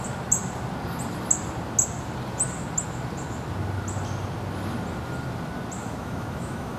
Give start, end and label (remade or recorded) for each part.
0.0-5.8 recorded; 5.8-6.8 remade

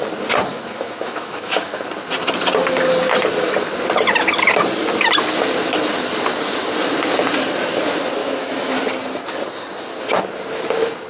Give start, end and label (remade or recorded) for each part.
0.0-0.5 recorded; 0.5-1.8 remade; 1.8-8.2 recorded; 8.2-8.8 remade; 8.8-11.1 recorded